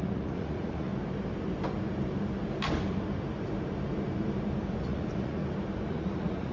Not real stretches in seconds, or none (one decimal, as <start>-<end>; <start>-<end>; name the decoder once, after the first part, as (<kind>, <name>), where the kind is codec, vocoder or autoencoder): 0.0-0.9 (vocoder, Vocos); 4.8-5.4; 5.9-6.5

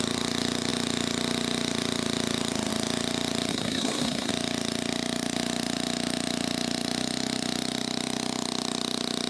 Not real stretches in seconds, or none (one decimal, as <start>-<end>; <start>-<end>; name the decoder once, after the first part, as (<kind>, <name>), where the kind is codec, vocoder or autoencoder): 3.5-4.3 (codec, SNAC)

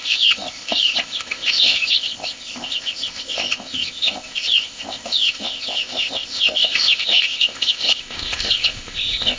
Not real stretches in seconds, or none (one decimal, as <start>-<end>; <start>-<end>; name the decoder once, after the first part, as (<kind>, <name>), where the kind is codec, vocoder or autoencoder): 0.0-9.4 (codec, ZipCodec)

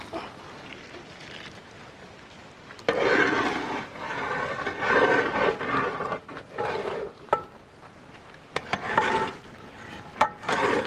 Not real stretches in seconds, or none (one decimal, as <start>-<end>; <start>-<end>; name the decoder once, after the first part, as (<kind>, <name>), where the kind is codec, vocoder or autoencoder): 6.8-8.4 (vocoder, BigVGAN v2)